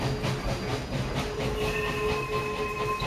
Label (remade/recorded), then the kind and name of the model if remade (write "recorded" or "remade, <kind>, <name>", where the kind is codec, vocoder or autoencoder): recorded